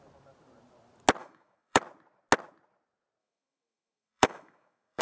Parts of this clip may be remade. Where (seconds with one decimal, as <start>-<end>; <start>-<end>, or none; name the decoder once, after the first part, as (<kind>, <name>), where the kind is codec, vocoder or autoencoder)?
1.2-1.8 (autoencoder, DAC-VAE); 3.2-5.0